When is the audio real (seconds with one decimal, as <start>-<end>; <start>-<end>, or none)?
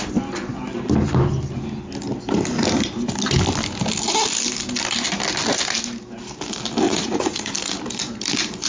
0.0-6.9; 7.5-8.7